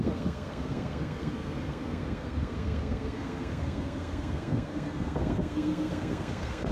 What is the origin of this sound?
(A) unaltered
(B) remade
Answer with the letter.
B